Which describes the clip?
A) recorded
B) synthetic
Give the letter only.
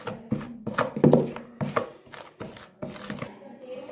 A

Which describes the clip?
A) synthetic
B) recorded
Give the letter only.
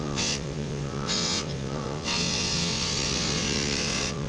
A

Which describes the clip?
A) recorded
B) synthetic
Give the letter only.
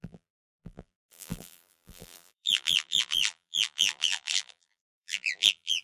B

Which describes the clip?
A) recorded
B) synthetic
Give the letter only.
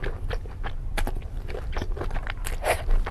A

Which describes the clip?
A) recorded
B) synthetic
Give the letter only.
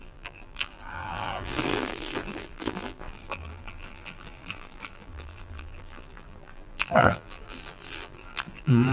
B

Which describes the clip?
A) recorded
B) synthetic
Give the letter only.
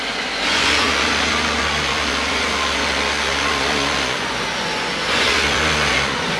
B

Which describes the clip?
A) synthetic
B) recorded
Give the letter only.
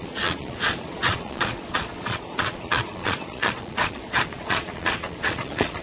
A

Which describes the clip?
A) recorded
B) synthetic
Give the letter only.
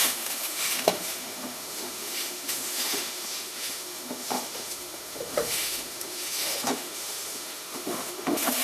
B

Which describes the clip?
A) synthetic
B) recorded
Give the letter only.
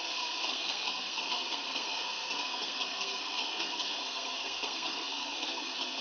A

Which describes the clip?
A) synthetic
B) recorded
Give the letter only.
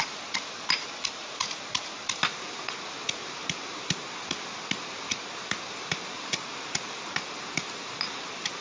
B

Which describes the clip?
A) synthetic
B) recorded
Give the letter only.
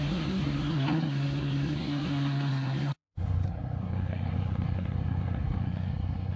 A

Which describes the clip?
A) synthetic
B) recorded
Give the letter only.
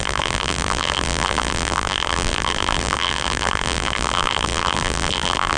A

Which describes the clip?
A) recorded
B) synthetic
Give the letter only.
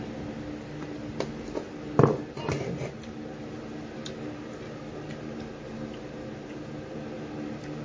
A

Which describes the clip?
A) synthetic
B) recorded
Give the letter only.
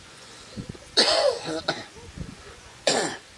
A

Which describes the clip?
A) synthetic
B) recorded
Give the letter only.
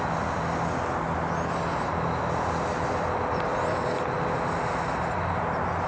B